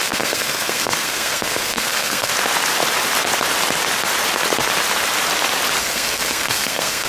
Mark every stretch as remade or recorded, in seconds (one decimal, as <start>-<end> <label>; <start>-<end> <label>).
0.0-2.3 remade; 2.3-5.8 recorded; 5.8-7.1 remade